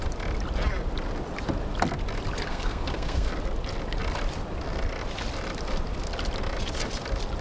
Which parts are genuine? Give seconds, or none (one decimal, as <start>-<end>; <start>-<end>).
0.0-2.5; 3.3-7.4